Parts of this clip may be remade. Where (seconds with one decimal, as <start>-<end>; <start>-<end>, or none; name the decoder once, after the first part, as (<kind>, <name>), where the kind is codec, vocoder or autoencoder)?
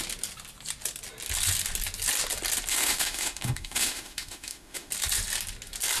2.7-4.9 (autoencoder, DAC-VAE)